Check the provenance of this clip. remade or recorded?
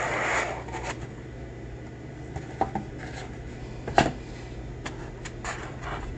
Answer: recorded